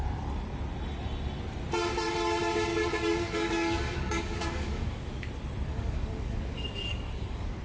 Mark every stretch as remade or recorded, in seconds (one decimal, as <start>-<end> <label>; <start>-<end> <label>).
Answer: 0.0-2.7 recorded; 2.7-5.3 remade; 5.3-5.7 recorded; 5.7-7.6 remade